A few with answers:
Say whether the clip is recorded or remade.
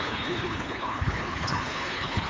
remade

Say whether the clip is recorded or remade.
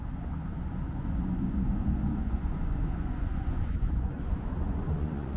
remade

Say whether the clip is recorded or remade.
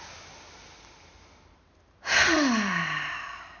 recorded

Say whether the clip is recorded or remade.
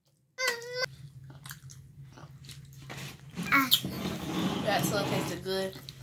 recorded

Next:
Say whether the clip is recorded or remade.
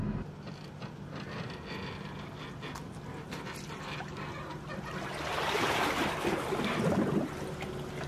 recorded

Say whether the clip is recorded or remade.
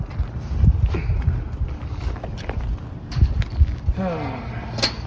recorded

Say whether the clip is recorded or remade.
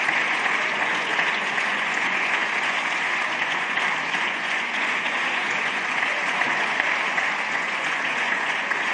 remade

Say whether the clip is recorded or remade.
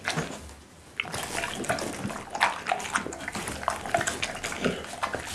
recorded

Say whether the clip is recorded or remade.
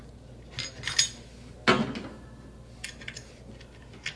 recorded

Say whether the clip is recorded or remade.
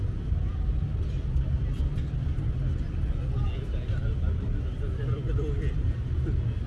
recorded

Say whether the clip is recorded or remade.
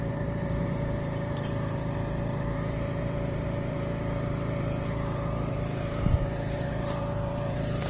remade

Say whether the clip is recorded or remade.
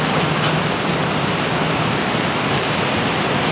recorded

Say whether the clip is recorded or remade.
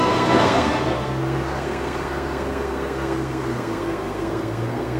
remade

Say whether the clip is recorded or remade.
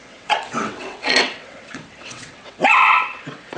remade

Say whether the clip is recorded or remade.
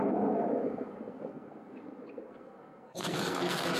remade